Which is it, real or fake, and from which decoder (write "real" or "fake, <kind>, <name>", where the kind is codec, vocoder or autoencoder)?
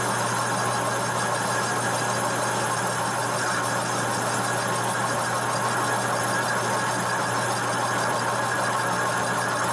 real